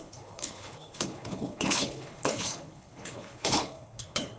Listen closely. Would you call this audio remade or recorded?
remade